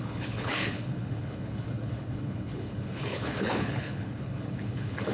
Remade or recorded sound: remade